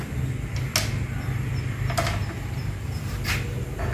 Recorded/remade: recorded